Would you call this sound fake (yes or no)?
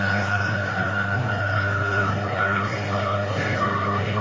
yes